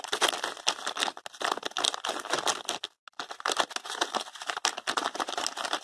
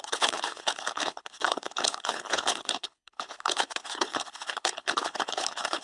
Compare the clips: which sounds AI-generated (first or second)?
second